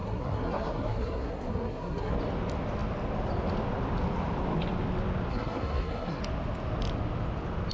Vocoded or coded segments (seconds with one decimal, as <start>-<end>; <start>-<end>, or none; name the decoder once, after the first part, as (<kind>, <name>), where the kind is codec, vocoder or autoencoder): 0.0-2.1 (codec, SNAC); 5.3-6.2